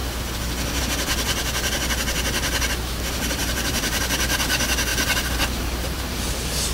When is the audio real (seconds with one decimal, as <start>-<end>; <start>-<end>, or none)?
0.0-3.4; 4.0-4.9; 6.0-6.7